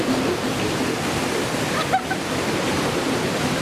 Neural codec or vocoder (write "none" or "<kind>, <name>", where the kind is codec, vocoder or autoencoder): none